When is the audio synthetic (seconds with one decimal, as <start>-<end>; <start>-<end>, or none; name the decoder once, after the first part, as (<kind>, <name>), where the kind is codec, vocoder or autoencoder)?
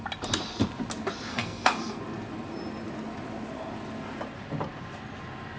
1.3-2.0 (codec, SNAC)